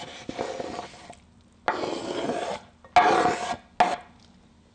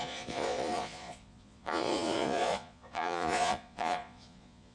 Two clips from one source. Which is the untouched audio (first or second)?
first